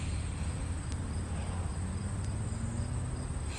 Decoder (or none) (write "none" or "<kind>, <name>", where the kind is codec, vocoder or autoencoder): none